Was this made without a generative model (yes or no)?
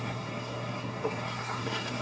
no